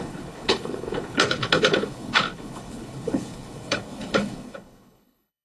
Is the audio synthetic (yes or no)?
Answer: yes